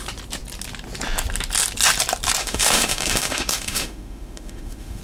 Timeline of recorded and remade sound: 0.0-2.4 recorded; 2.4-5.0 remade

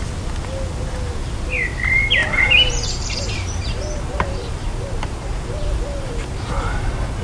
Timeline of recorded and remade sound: 0.0-2.2 recorded; 2.2-6.5 remade; 6.5-7.2 recorded